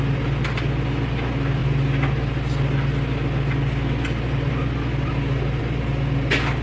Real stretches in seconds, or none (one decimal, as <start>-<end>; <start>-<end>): 0.0-6.6